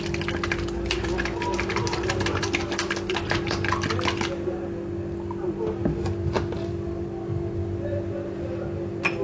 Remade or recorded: recorded